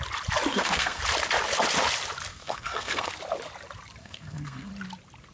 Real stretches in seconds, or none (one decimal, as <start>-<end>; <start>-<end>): 0.0-0.5; 1.0-2.3; 3.1-4.0; 4.7-5.3